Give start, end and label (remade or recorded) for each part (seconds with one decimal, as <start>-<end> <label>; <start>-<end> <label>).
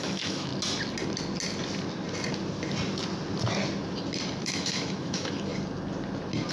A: 0.0-0.5 remade; 0.5-4.4 recorded; 4.4-5.5 remade; 5.5-6.5 recorded